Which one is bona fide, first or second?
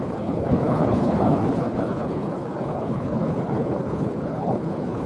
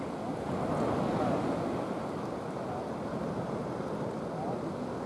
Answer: second